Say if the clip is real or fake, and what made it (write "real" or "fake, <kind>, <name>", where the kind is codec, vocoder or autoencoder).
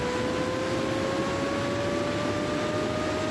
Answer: real